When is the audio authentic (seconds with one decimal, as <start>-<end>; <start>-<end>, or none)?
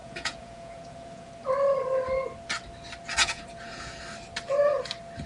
1.3-3.2; 4.0-5.3